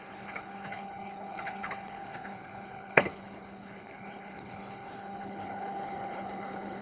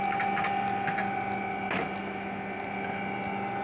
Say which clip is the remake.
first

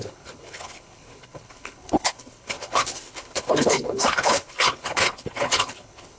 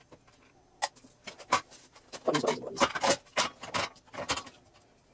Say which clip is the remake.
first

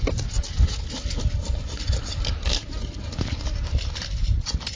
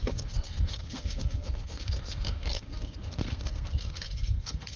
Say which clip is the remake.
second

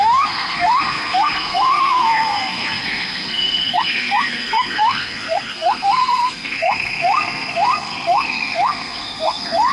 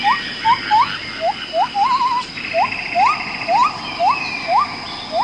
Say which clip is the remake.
first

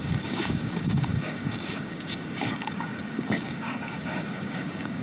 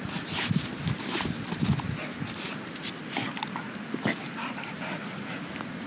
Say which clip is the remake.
first